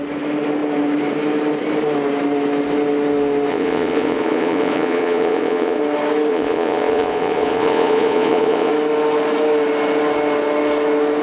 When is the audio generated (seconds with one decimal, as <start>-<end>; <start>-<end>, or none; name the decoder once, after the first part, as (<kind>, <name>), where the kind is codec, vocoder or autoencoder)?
3.5-5.8 (vocoder, Vocos); 6.3-8.7